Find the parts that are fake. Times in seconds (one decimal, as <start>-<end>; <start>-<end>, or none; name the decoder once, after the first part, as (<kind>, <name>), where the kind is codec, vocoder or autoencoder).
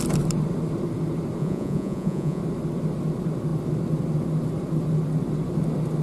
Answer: 1.4-2.4 (vocoder, Vocos)